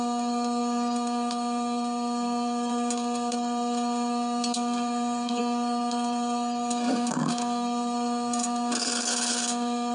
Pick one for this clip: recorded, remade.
remade